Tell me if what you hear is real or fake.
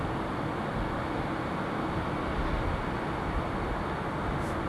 real